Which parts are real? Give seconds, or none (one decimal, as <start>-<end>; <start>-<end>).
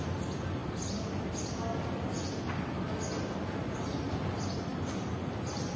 0.0-5.8